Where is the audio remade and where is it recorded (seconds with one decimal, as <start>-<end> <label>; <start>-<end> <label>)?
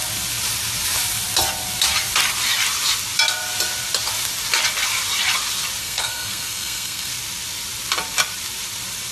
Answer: 0.0-5.8 recorded; 5.8-7.1 remade; 7.1-9.1 recorded